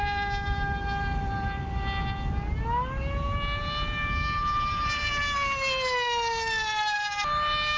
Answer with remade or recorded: recorded